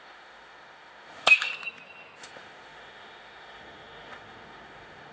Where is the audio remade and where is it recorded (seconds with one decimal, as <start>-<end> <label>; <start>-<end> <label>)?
0.0-1.5 remade; 1.5-2.2 recorded; 2.2-5.1 remade